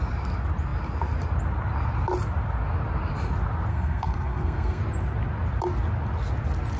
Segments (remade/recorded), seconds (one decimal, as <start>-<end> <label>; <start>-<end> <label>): 0.0-3.7 recorded; 3.7-4.8 remade; 4.8-6.8 recorded